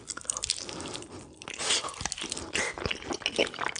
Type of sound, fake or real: real